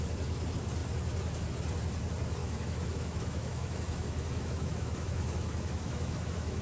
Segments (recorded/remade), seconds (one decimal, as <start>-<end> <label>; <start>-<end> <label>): 0.0-2.4 recorded; 2.4-6.6 remade